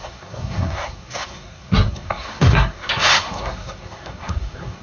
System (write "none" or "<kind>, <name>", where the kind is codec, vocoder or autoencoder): codec, SNAC